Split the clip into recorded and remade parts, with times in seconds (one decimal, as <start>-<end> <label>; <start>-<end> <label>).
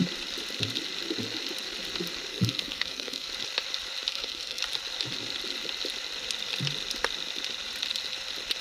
0.0-2.3 recorded; 2.3-3.3 remade; 3.3-4.1 recorded; 4.1-4.6 remade; 4.6-8.6 recorded